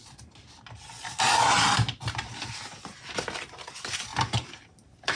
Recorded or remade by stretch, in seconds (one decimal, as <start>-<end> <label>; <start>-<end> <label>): 0.0-5.1 recorded